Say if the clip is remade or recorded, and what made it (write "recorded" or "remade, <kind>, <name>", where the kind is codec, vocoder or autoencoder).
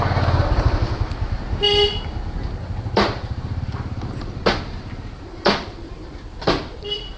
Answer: recorded